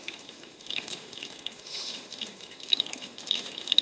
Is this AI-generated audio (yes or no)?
yes